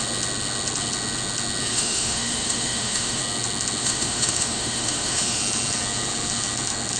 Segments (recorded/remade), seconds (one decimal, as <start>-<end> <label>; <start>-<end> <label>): 0.0-1.7 recorded; 1.7-3.2 remade; 3.2-3.8 recorded; 3.8-5.4 remade; 5.4-7.0 recorded